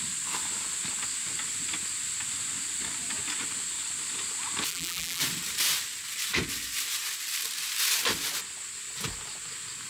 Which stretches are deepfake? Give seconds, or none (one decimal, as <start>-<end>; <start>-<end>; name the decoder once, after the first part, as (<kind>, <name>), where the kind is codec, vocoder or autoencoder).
4.7-5.2 (vocoder, BigVGAN v2)